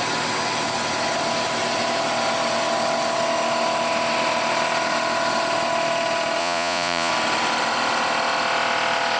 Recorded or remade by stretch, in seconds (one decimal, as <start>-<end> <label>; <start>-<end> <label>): 0.0-6.4 recorded; 6.4-7.1 remade; 7.1-9.2 recorded